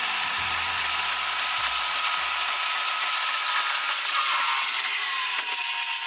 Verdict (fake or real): fake